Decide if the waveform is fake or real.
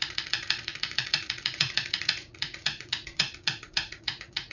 fake